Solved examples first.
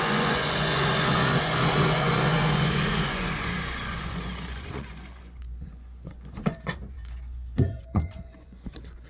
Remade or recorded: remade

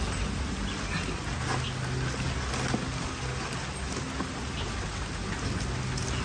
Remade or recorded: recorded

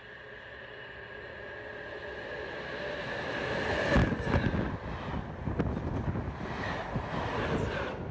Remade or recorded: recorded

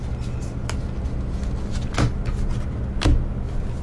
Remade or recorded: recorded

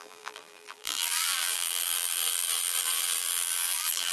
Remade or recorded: remade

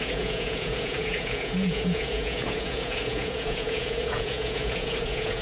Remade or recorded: remade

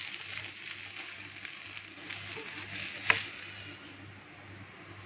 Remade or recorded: recorded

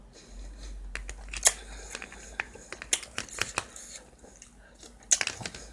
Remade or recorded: recorded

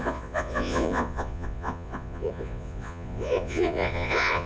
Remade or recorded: remade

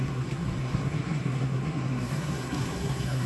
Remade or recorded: remade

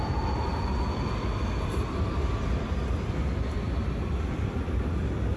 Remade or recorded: recorded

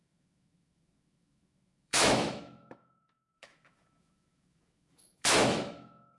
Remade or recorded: remade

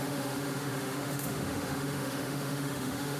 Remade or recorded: remade